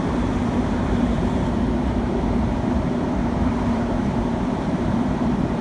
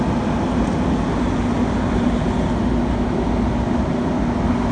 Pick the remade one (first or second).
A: first